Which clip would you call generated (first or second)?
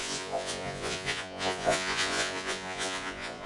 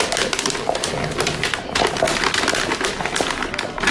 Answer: first